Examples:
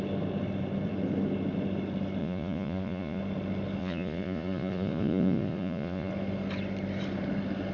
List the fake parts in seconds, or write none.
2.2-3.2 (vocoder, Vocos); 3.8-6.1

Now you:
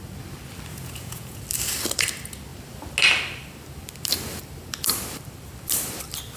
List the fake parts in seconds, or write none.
0.7-1.4 (vocoder, Vocos)

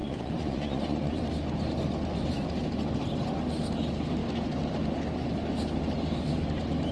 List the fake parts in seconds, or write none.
0.0-1.2 (vocoder, Vocos)

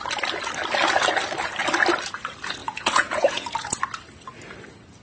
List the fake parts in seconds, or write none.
2.6-3.8 (vocoder, Vocos)

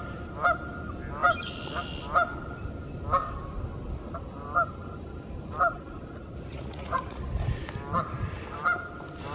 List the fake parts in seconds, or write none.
6.5-7.3 (vocoder, Vocos)